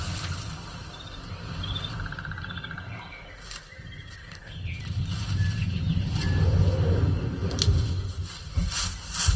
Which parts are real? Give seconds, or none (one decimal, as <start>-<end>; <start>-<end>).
0.0-4.2; 4.7-9.4